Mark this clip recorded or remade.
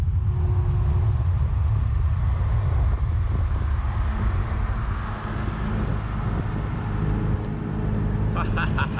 recorded